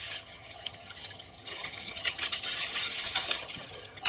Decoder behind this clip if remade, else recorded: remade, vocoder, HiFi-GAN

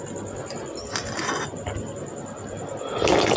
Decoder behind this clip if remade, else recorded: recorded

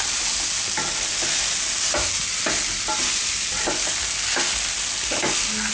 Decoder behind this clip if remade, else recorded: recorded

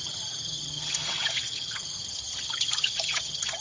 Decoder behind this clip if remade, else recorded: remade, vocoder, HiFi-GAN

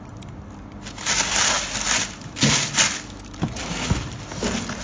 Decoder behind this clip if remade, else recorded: recorded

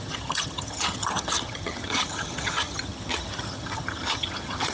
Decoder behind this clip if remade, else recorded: remade, vocoder, HiFi-GAN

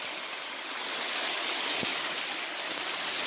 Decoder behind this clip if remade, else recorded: recorded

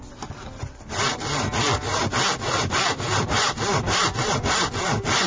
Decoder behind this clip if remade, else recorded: recorded